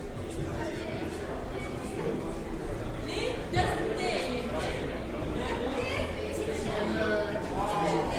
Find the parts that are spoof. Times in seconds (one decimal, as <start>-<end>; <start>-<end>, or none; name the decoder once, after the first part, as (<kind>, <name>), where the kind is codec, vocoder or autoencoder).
2.6-6.8 (vocoder, BigVGAN v2)